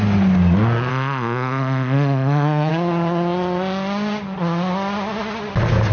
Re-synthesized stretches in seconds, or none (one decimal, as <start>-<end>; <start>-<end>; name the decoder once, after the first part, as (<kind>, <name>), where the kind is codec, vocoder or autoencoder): 0.9-2.7 (autoencoder, DAC-VAE)